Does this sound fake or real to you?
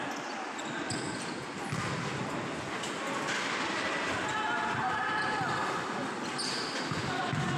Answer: real